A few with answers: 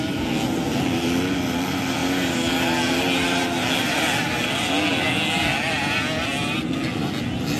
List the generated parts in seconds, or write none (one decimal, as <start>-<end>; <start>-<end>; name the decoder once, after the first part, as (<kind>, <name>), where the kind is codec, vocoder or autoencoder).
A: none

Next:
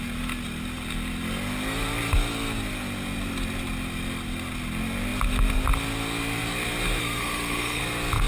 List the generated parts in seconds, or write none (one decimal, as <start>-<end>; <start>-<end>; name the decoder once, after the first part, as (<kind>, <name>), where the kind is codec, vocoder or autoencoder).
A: 7.0-7.8 (codec, SNAC)

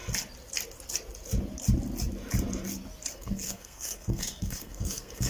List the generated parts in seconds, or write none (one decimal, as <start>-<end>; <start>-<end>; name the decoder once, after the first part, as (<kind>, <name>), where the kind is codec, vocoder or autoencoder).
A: 3.1-5.3 (codec, SNAC)

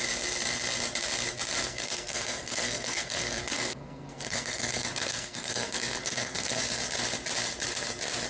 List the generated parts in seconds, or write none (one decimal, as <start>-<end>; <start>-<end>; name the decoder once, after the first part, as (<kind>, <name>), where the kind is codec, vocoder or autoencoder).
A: 1.6-6.6 (codec, SNAC)

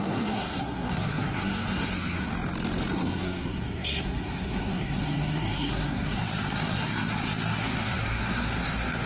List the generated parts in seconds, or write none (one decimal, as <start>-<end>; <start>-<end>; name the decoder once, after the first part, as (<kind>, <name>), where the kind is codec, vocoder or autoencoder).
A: 0.0-2.3 (codec, SNAC); 2.9-9.1